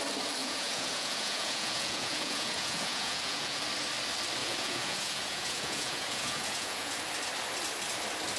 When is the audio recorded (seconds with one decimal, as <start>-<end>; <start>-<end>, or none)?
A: 0.0-0.4; 3.6-4.4; 7.0-8.4